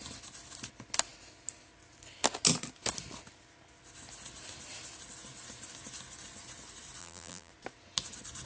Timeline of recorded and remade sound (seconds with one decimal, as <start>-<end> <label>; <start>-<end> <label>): 0.0-7.0 recorded; 7.0-7.5 remade; 7.5-8.5 recorded